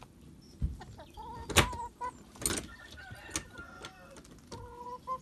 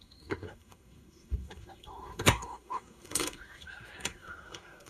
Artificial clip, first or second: second